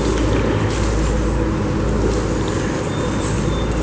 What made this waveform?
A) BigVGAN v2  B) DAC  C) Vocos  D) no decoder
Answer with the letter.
D